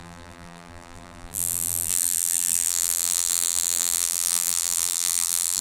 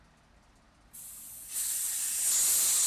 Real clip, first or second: second